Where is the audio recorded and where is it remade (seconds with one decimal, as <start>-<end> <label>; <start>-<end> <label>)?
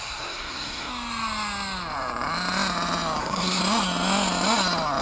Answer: 0.0-0.9 remade; 0.9-3.2 recorded; 3.2-3.6 remade; 3.6-5.0 recorded